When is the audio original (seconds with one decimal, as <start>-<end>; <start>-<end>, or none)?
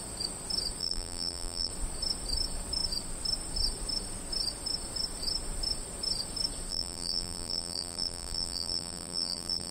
0.0-0.8; 1.7-6.7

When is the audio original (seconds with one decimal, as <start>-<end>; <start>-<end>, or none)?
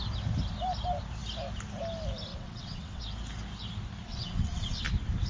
0.0-2.3; 3.0-4.1; 4.8-5.3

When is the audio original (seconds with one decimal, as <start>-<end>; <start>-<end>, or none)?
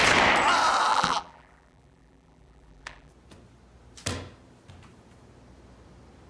0.0-0.9; 3.1-6.3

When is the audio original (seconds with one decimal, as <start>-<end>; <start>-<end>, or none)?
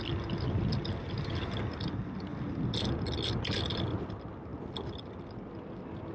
0.0-6.1